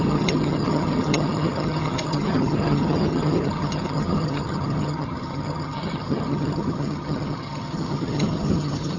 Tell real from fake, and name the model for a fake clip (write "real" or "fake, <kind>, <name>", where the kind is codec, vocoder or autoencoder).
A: fake, vocoder, HiFi-GAN